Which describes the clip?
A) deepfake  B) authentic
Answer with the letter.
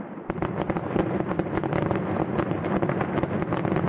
B